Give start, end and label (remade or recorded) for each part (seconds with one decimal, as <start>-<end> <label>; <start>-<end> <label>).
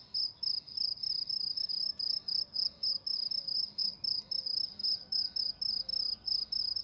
0.0-6.8 recorded